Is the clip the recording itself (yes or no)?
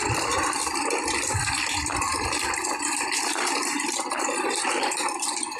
no